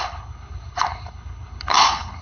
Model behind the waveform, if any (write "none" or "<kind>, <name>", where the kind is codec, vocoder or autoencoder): codec, HILCodec